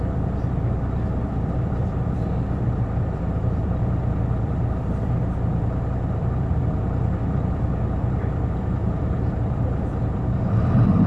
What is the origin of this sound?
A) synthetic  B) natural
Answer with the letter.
A